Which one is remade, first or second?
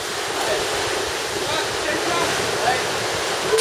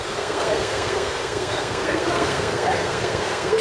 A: second